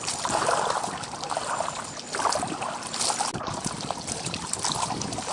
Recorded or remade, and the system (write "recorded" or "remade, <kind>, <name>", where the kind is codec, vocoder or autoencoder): recorded